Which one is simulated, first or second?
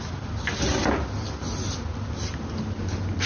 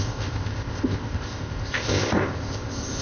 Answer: second